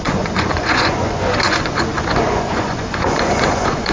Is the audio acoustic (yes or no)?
no